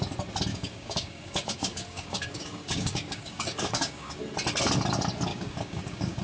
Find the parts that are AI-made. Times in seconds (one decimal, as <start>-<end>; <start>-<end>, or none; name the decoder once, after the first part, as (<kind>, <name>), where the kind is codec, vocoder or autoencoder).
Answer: 0.5-4.2 (codec, DAC); 5.3-6.2